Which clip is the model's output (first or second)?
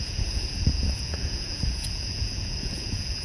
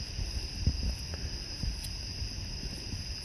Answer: first